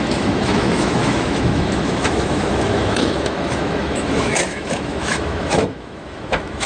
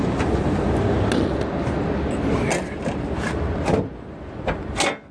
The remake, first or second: first